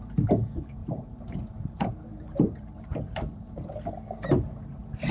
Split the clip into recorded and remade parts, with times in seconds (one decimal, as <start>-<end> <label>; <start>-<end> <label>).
0.0-0.8 recorded; 0.8-3.9 remade; 3.9-5.1 recorded